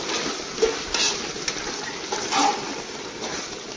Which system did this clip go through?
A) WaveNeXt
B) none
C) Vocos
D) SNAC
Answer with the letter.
B